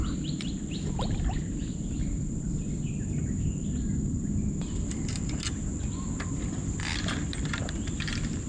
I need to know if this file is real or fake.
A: real